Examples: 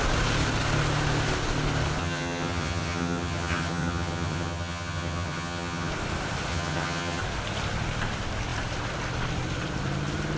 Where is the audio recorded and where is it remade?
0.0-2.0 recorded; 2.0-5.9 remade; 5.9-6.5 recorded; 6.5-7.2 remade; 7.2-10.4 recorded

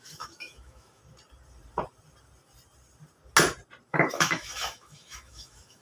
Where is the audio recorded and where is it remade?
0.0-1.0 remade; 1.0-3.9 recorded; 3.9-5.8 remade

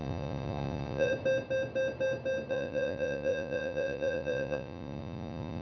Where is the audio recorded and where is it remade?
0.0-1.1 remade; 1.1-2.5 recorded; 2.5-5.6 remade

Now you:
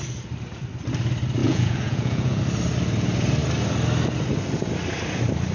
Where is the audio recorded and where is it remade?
0.0-1.4 recorded; 1.4-2.4 remade; 2.4-5.5 recorded

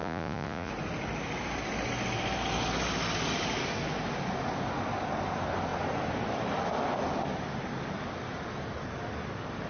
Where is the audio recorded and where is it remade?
0.0-0.7 remade; 0.7-9.7 recorded

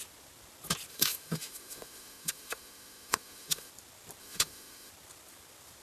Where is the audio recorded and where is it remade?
0.0-0.9 recorded; 0.9-3.7 remade; 3.7-4.2 recorded; 4.2-4.9 remade; 4.9-5.8 recorded